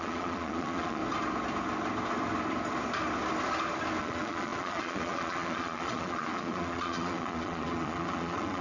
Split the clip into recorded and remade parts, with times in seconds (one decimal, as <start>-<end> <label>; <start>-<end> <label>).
0.0-1.0 remade; 1.0-4.0 recorded; 4.0-8.6 remade